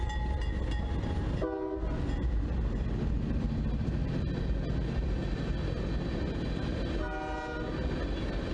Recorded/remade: recorded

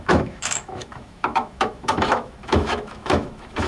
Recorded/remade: remade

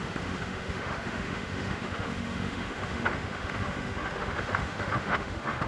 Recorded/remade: remade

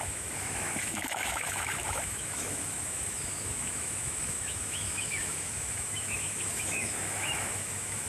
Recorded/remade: remade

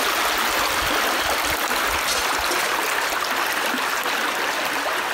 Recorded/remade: recorded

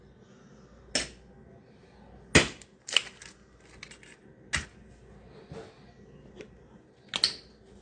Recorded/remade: recorded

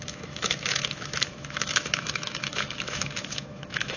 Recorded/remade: remade